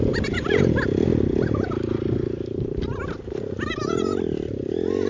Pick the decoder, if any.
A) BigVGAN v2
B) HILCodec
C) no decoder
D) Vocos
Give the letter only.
C